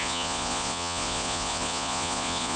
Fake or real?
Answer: fake